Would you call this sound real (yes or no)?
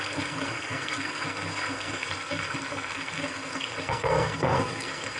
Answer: no